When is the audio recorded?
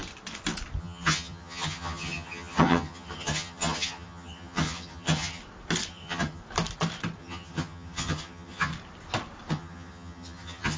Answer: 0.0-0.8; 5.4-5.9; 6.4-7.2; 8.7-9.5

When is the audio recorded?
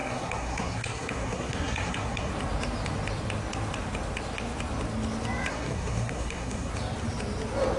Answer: 2.3-5.5; 6.7-7.8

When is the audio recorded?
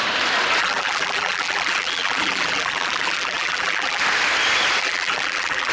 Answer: 0.0-0.6; 4.0-4.8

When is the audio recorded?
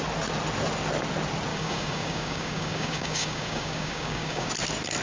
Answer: 0.0-1.5; 4.5-5.0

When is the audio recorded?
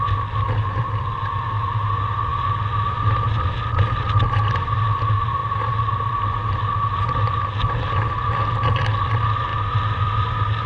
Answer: 0.0-10.7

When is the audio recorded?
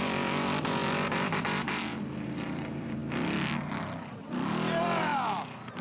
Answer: 3.0-4.2; 5.1-5.8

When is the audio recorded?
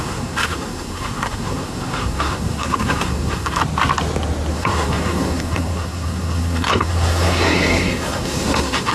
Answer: 3.6-4.5